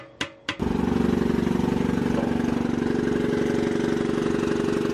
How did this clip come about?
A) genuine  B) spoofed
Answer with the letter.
A